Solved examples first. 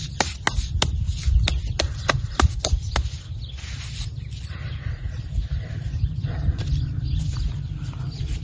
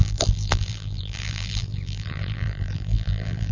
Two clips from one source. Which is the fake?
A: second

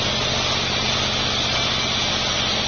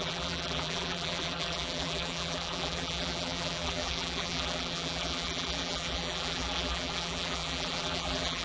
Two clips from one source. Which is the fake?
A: second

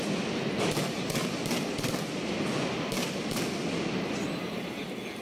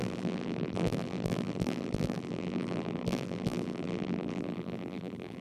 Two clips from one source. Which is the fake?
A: second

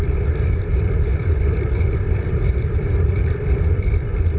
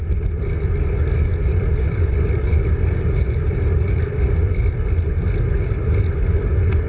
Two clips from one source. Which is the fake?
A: first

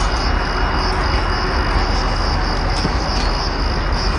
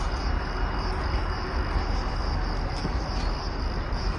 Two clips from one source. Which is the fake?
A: second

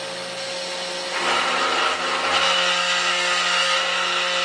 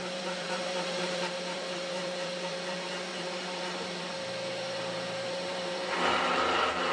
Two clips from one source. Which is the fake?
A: second